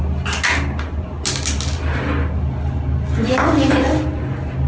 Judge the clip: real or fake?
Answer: real